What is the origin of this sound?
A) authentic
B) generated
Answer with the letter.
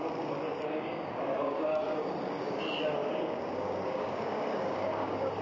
B